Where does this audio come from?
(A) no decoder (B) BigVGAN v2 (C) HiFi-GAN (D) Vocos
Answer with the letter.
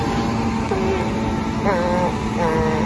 A